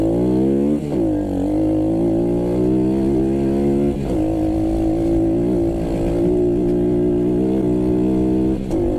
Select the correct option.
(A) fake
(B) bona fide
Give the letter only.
B